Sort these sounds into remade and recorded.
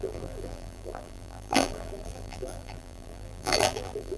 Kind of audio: remade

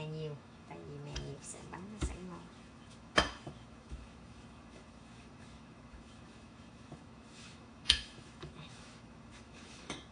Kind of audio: remade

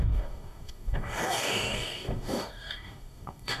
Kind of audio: remade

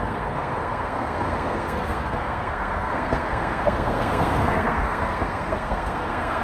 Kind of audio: remade